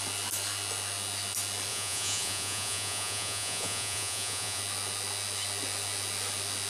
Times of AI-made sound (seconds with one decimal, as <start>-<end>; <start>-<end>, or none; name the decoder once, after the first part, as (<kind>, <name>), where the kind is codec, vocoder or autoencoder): 1.7-4.6 (vocoder, Vocos)